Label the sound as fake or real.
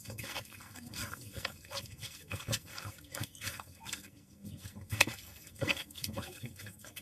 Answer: fake